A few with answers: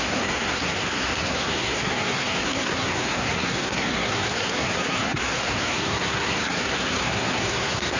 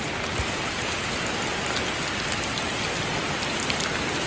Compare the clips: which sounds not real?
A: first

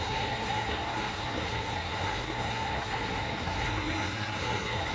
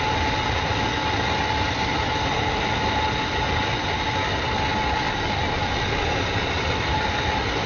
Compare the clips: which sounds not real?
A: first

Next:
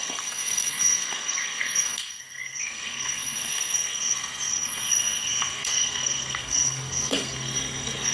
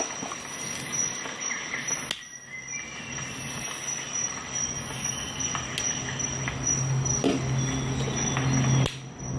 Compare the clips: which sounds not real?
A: first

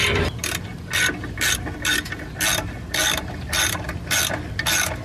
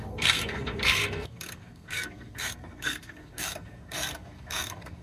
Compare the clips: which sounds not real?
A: second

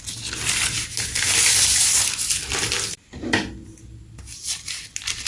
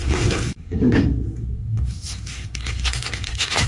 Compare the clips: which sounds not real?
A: second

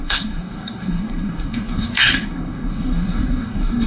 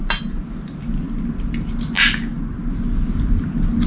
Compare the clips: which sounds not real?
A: first